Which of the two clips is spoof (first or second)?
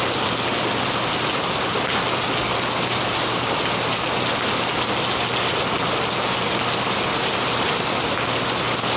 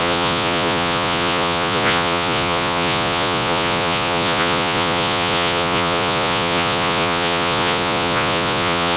second